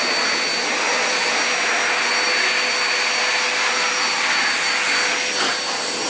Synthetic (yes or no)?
no